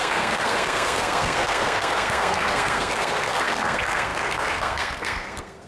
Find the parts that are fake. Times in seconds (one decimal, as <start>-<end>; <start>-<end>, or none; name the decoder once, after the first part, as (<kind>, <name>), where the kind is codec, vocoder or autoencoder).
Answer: 0.0-5.7 (codec, SNAC)